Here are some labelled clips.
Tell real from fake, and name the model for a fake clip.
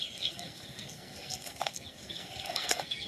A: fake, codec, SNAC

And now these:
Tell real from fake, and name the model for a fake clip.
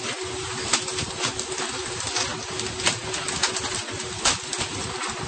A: real